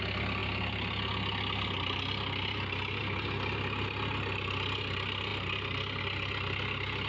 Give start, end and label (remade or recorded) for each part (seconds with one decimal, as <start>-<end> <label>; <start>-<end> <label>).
0.0-7.1 recorded